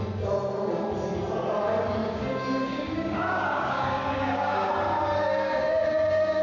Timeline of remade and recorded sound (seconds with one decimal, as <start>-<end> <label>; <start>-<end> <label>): 0.0-2.0 recorded; 2.0-4.7 remade; 4.7-5.2 recorded; 5.2-6.4 remade